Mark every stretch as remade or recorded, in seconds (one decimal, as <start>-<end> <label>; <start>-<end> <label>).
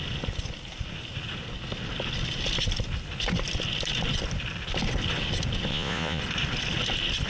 0.0-5.7 recorded; 5.7-6.2 remade; 6.2-7.3 recorded